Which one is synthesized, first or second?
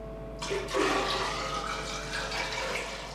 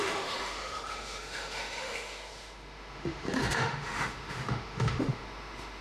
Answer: second